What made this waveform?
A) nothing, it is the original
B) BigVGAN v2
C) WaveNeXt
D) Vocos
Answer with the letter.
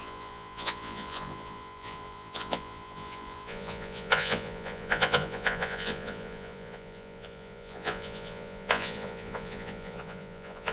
D